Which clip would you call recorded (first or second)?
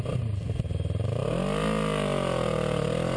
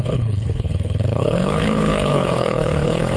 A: first